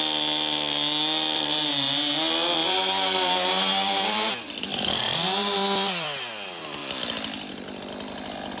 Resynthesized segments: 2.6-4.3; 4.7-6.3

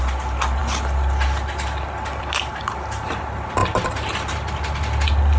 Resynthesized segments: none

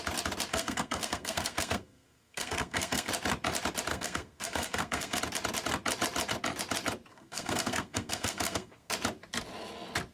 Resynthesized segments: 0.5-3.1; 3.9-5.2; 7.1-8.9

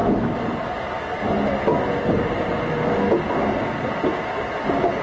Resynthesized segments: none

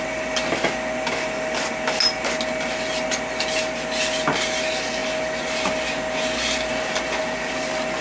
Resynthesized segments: none

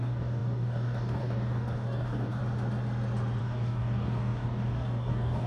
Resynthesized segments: 0.0-2.4; 3.4-5.5

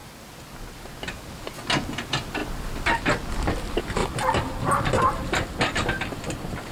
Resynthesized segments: none